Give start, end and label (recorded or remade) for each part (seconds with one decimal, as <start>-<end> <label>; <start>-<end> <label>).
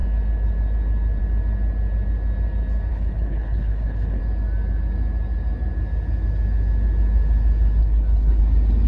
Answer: 0.0-2.9 recorded; 2.9-4.2 remade; 4.2-7.8 recorded; 7.8-8.4 remade; 8.4-8.9 recorded